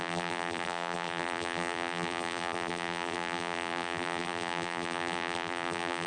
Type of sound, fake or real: fake